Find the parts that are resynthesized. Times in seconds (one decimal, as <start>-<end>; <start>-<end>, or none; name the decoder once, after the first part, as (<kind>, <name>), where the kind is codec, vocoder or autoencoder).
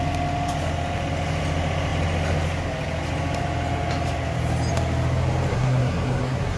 5.5-6.6 (codec, SNAC)